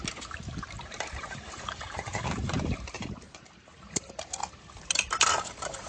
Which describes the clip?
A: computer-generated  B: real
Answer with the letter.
A